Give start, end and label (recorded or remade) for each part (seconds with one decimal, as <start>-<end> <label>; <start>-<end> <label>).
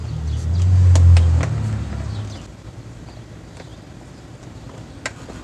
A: 0.0-5.4 recorded